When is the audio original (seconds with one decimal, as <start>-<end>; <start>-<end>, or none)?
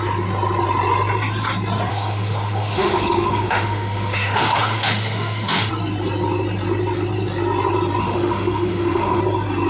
0.0-1.9; 5.7-8.0; 9.2-9.7